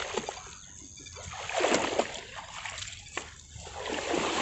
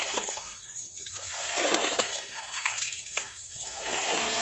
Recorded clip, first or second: first